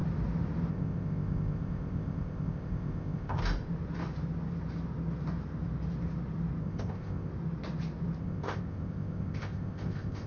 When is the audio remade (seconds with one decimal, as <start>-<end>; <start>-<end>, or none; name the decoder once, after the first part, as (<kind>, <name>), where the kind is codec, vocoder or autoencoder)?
0.7-3.4 (codec, ZipCodec); 6.6-7.3; 8.2-10.3